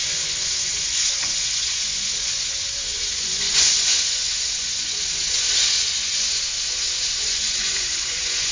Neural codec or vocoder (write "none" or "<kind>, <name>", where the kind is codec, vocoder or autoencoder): vocoder, Vocos